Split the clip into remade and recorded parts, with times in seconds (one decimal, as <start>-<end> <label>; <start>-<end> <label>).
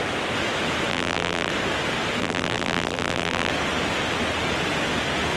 0.0-0.9 recorded; 0.9-1.5 remade; 1.5-2.2 recorded; 2.2-3.5 remade; 3.5-5.4 recorded